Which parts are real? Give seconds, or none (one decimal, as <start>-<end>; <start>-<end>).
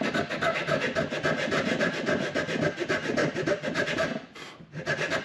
0.0-3.2; 3.9-5.2